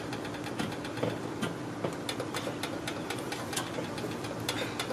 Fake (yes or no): no